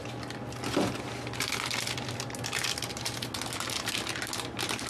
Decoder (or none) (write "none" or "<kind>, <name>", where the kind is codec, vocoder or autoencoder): none